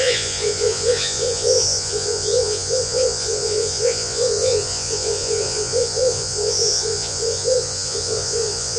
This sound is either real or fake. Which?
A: fake